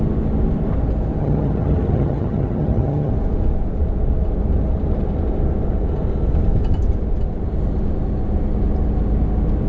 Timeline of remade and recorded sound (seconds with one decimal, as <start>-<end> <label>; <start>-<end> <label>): 0.0-1.2 recorded; 1.2-3.1 remade; 3.1-9.7 recorded